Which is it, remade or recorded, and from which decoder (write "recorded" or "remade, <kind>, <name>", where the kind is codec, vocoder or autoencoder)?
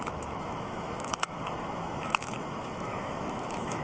remade, autoencoder, DAC-VAE